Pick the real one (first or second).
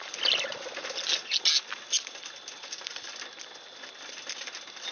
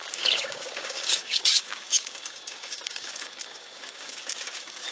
first